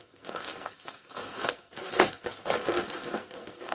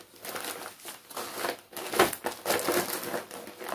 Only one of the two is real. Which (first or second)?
second